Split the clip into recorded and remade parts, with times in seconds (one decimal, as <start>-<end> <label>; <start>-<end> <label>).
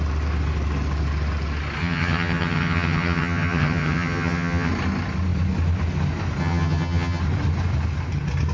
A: 0.0-1.8 recorded; 1.8-4.7 remade; 4.7-6.4 recorded; 6.4-7.2 remade; 7.2-8.5 recorded